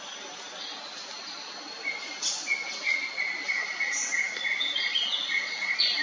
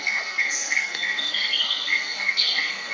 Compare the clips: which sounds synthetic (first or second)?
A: second